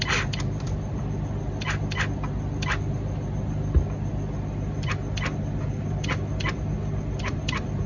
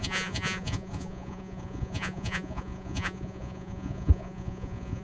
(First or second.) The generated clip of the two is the second